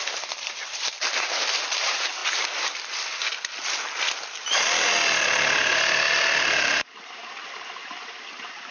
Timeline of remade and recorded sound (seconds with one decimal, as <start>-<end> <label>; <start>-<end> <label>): 0.0-2.2 remade; 2.2-6.4 recorded; 6.4-8.7 remade